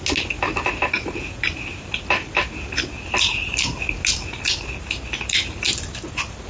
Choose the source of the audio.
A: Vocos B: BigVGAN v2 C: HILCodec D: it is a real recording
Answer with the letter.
D